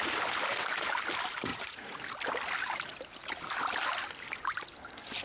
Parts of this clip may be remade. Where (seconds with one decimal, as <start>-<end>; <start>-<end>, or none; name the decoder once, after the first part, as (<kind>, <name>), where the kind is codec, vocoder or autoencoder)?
1.5-2.0 (vocoder, Vocos)